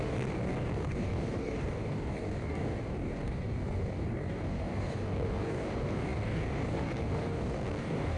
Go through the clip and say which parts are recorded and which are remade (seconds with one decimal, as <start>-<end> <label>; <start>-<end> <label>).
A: 0.0-8.2 remade